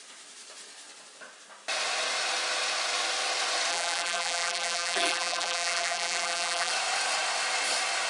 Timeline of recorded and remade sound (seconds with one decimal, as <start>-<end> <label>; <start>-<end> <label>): 0.0-3.7 recorded; 3.7-6.7 remade; 6.7-8.1 recorded